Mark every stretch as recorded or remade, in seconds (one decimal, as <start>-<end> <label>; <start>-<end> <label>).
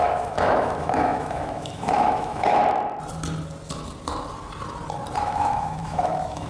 0.0-2.6 remade; 2.6-5.2 recorded; 5.2-6.5 remade